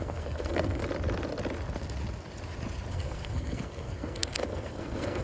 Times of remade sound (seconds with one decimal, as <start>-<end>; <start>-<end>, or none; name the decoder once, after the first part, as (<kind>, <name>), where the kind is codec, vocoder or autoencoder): 0.0-0.8 (codec, SNAC); 2.9-5.2